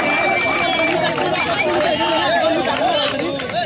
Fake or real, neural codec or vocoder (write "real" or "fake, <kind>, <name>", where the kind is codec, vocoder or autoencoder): real